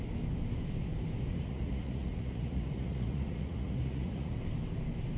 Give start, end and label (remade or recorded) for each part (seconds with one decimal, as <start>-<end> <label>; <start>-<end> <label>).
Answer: 0.0-1.3 recorded; 1.3-4.4 remade; 4.4-5.2 recorded